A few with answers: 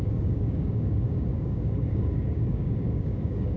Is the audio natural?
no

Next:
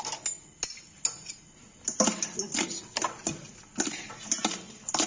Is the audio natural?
yes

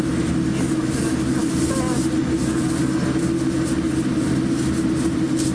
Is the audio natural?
yes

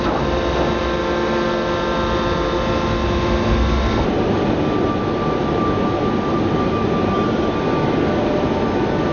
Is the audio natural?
yes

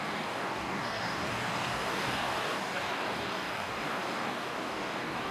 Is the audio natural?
no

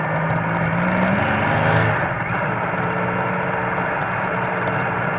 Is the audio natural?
yes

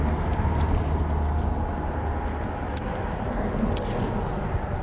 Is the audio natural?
yes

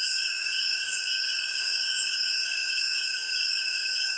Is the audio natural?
no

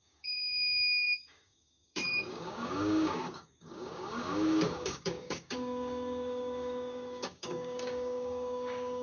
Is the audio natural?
no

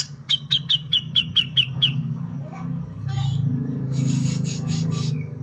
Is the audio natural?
no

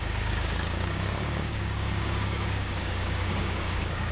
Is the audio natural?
no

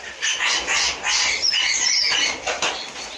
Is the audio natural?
yes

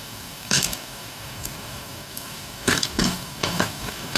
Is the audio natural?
no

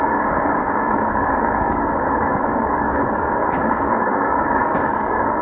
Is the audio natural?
no